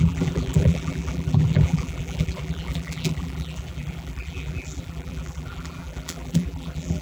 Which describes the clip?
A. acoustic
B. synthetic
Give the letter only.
B